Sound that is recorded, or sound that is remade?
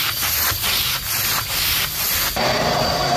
recorded